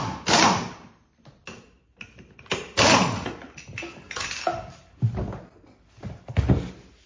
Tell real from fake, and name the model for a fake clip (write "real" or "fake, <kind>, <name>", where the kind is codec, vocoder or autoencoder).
real